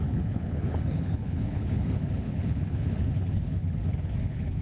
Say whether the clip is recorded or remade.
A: remade